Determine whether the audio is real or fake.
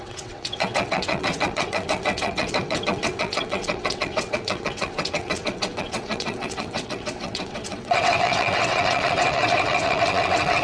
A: fake